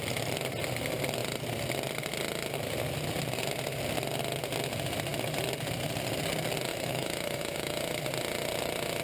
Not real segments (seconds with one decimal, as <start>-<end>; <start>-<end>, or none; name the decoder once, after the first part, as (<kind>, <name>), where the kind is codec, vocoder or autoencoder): 6.7-8.0 (autoencoder, DAC-VAE)